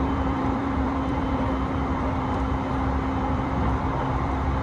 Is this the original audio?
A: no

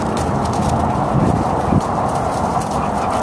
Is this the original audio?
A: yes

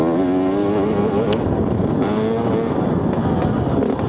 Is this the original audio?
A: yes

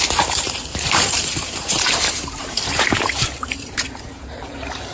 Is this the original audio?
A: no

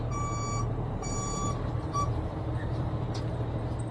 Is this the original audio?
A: no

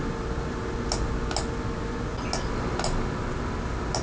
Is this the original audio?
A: yes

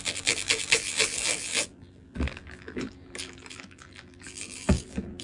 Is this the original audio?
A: no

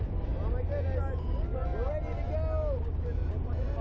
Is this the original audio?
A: yes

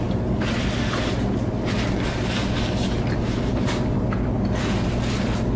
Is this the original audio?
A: yes